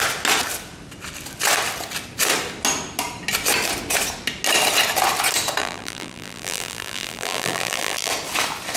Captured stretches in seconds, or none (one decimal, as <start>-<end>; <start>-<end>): 0.0-5.6; 8.1-8.8